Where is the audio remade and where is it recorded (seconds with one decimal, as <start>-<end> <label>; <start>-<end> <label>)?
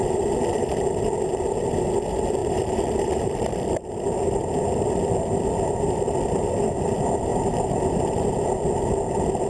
0.0-2.4 recorded; 2.4-3.9 remade; 3.9-7.3 recorded; 7.3-8.0 remade; 8.0-9.5 recorded